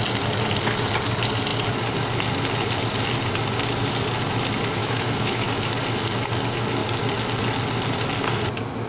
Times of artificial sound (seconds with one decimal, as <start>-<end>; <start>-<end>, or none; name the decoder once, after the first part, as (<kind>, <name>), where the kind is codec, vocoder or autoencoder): 4.8-5.7 (autoencoder, DAC-VAE)